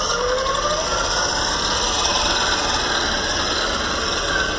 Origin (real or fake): real